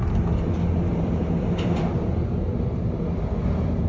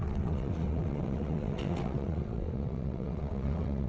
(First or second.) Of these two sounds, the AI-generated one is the second